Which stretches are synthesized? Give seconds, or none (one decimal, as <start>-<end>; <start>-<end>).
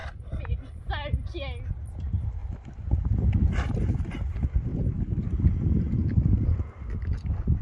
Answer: 2.4-4.3